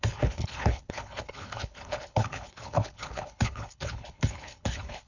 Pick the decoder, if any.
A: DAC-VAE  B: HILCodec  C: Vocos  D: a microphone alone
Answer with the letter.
B